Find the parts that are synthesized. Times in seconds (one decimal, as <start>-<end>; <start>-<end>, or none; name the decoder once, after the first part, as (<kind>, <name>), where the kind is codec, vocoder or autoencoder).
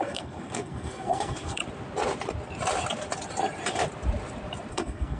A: 0.0-1.6 (codec, SNAC); 4.7-5.2